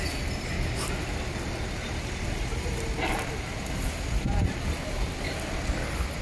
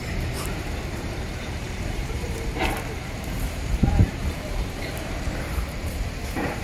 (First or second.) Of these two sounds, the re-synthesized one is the second